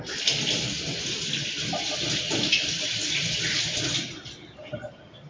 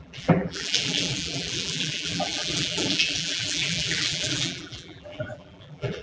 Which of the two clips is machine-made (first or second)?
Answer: second